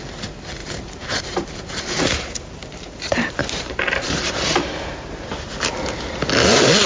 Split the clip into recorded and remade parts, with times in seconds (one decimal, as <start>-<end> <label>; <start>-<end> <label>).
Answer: 0.0-0.6 recorded; 0.6-2.0 remade; 2.0-2.6 recorded; 2.6-5.3 remade; 5.3-6.9 recorded